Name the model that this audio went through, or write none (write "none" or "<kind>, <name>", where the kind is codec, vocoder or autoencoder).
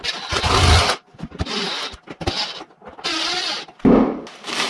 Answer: none